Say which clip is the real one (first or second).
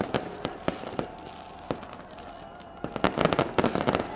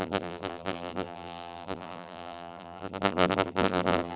first